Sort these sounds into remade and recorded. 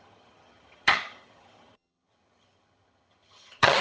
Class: remade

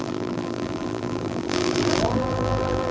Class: remade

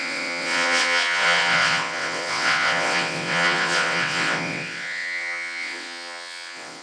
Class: remade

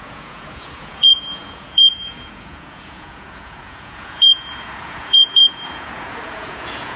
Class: remade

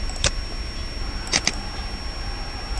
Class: recorded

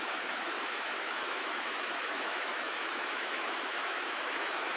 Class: remade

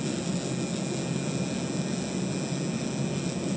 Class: recorded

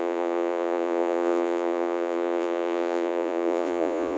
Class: remade